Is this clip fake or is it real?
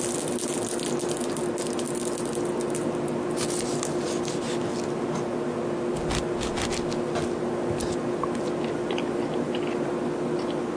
real